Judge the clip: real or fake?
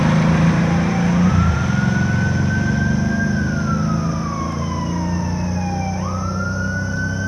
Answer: real